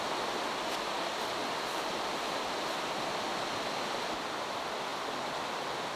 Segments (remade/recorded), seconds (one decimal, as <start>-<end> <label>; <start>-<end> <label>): 0.0-6.0 recorded